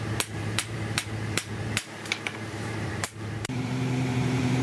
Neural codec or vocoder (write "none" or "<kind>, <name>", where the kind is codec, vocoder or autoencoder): vocoder, BigVGAN v2